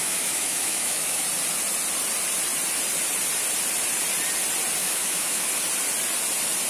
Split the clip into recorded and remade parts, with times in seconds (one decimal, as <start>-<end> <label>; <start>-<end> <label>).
0.0-1.2 remade; 1.2-4.8 recorded; 4.8-5.5 remade; 5.5-6.7 recorded